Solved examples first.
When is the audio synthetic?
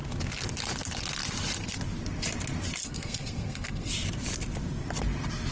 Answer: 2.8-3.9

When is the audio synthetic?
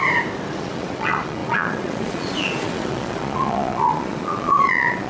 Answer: 0.6-5.1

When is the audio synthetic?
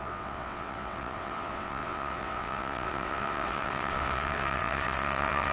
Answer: 0.0-5.5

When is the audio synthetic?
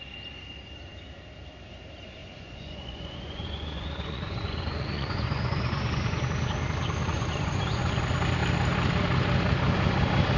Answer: 2.2-6.2; 7.1-8.0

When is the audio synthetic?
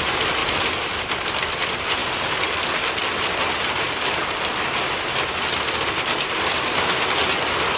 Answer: none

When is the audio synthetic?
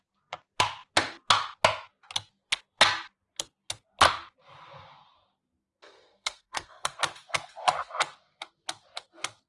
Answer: 5.6-7.0